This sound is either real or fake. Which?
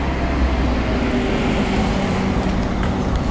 real